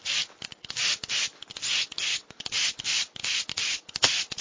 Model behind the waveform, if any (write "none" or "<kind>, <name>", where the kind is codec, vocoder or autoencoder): none